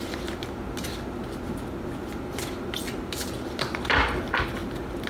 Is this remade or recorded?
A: recorded